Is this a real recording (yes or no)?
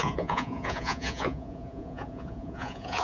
no